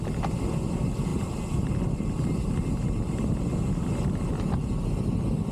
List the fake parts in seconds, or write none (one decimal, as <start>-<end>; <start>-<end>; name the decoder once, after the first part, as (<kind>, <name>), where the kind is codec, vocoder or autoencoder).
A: none